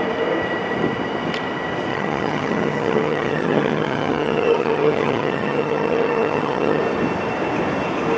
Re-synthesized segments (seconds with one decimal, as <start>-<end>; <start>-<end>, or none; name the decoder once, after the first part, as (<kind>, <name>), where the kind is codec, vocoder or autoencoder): 1.9-6.8 (vocoder, HiFi-GAN)